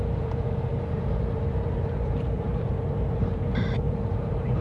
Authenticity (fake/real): fake